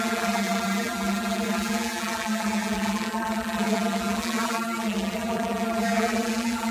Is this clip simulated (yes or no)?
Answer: yes